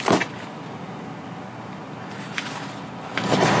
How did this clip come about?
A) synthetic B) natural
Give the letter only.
B